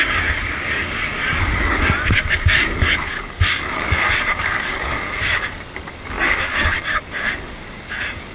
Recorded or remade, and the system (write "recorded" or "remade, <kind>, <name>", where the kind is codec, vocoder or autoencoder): remade, codec, DAC